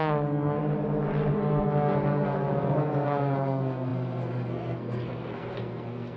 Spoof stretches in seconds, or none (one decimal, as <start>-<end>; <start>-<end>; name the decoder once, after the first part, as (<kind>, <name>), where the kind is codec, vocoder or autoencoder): 0.0-0.6 (codec, SNAC); 1.3-6.2